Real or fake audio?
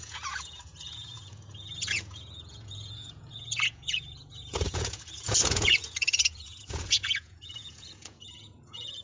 fake